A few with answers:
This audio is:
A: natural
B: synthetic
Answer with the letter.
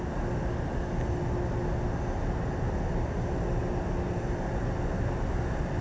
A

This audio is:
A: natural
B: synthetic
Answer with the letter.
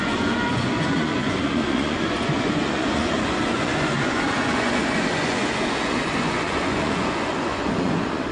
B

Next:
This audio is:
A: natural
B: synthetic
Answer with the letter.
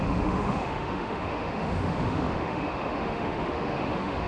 B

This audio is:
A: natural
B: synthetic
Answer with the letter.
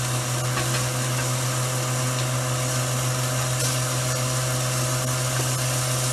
A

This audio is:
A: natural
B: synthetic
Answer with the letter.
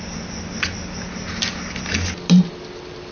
A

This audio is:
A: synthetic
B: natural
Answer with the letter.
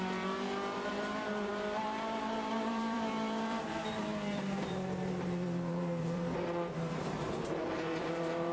A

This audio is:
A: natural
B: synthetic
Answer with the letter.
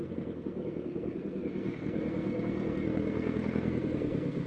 B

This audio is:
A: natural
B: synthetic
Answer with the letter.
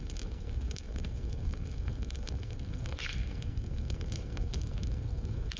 B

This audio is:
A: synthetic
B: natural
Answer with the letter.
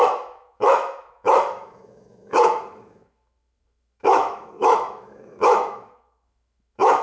A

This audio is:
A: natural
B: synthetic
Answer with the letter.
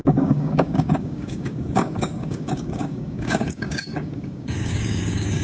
B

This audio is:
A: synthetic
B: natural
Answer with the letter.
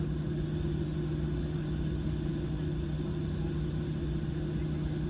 B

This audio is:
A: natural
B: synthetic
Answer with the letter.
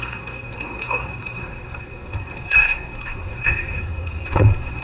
B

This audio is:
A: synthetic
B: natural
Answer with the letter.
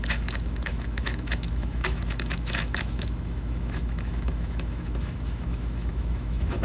A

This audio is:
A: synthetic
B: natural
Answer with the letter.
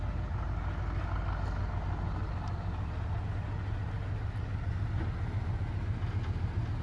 B